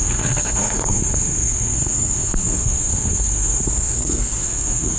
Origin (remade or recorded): remade